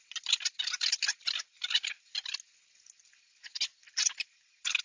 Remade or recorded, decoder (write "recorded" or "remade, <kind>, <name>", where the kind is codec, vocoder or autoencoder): recorded